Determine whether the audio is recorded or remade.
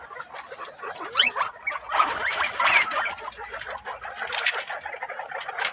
remade